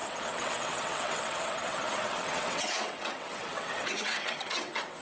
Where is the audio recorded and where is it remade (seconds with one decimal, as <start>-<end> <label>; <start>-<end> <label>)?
0.0-5.0 remade